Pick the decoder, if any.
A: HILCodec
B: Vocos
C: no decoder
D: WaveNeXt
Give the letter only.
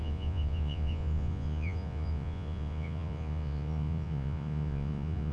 B